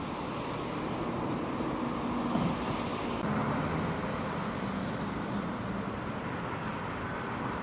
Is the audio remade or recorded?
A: recorded